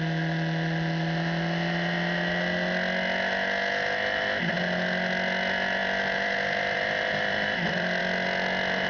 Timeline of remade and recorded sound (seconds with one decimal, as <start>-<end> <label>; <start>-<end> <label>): 0.0-5.8 recorded; 5.8-8.0 remade; 8.0-8.9 recorded